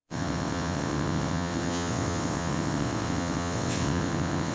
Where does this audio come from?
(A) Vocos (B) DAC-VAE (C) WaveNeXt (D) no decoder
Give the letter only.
C